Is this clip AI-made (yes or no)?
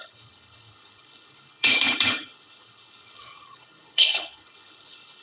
yes